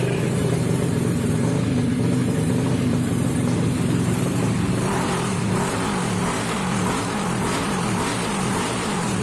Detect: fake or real fake